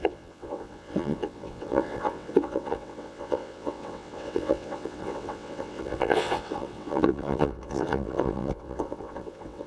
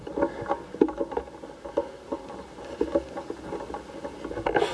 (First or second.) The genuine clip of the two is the second